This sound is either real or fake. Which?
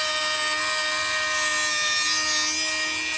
real